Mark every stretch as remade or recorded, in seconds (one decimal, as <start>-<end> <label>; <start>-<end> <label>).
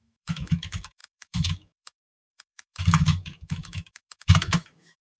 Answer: 0.0-5.2 remade